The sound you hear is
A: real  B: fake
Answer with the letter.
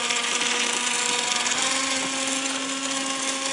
A